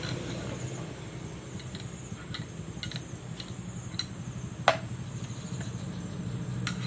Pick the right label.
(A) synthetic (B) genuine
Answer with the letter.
B